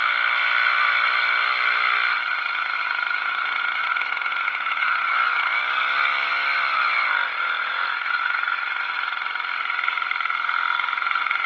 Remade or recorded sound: recorded